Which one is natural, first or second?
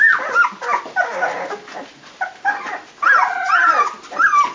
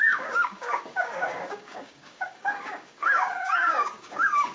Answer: first